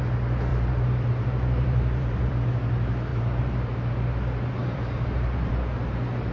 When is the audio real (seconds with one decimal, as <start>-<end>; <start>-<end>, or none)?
0.0-0.5; 2.3-3.1; 3.9-4.6; 5.5-6.3